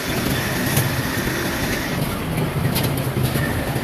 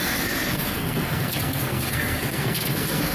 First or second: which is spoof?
second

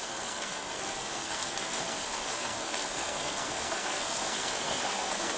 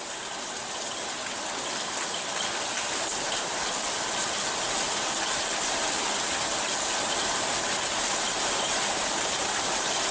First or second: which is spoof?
first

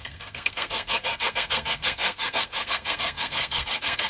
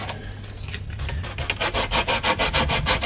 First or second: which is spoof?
first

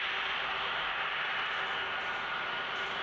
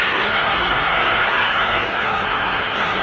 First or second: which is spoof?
second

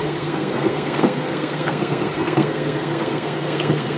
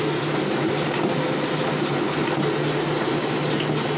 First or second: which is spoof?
first